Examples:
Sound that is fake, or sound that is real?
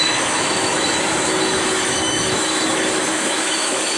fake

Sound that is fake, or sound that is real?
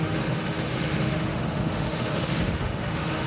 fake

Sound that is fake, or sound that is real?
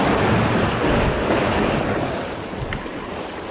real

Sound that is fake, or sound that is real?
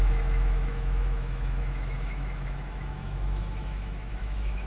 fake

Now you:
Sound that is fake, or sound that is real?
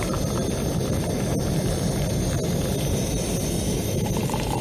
real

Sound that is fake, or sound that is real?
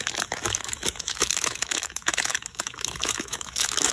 fake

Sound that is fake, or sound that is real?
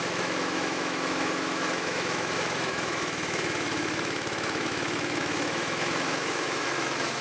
fake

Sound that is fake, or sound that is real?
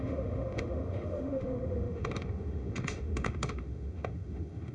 fake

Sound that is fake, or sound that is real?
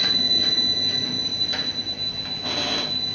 real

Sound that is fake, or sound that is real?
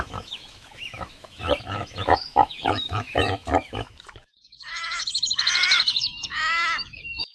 fake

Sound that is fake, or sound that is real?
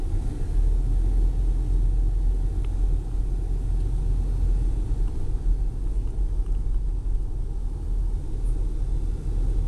real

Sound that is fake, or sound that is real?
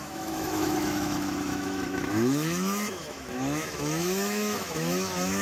fake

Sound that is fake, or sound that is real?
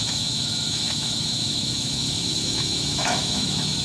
fake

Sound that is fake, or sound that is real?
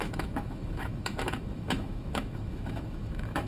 fake